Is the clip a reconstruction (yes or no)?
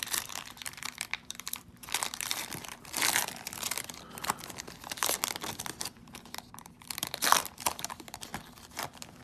yes